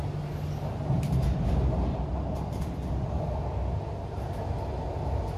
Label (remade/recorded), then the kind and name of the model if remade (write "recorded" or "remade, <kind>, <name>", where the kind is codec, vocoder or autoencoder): recorded